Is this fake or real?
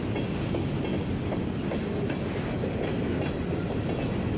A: real